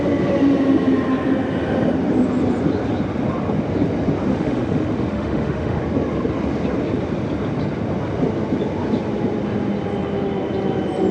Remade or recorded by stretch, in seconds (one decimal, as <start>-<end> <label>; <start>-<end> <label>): 0.0-4.3 recorded; 4.3-5.8 remade; 5.8-11.1 recorded